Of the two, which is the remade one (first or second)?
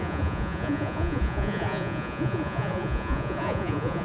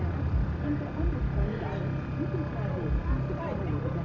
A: first